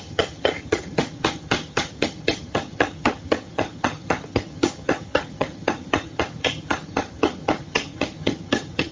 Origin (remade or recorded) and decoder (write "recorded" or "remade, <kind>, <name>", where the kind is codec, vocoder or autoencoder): remade, vocoder, HiFi-GAN